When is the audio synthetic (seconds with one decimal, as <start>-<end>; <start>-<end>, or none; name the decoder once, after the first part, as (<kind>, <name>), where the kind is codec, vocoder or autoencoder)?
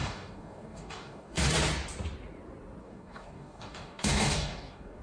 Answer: 0.0-1.4 (codec, DAC); 2.8-5.0